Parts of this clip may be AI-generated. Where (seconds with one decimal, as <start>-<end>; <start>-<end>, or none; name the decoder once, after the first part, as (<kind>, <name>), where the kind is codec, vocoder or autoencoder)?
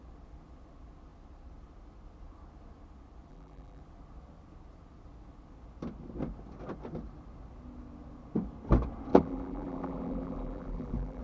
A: 3.3-3.8 (vocoder, BigVGAN v2); 9.1-11.2